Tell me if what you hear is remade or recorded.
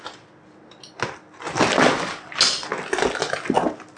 recorded